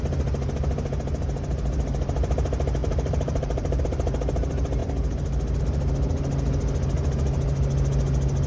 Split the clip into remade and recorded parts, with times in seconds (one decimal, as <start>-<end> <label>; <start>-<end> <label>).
0.0-2.8 recorded; 2.8-3.8 remade; 3.8-8.5 recorded